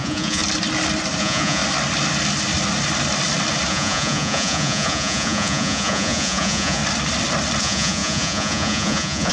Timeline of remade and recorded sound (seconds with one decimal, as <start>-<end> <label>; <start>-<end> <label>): 0.0-0.4 remade; 0.4-1.2 recorded; 1.2-1.6 remade; 1.6-3.7 recorded; 3.7-6.8 remade; 6.8-7.6 recorded; 7.6-9.3 remade